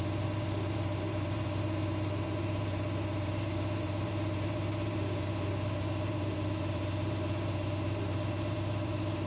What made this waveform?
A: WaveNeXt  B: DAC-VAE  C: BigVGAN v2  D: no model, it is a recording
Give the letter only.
C